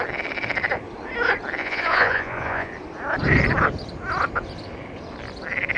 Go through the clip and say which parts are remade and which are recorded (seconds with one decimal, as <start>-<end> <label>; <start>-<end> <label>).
0.0-1.6 recorded; 1.6-2.7 remade; 2.7-5.8 recorded